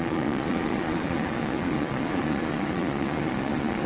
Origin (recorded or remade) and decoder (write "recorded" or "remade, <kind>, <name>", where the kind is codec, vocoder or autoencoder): remade, vocoder, Vocos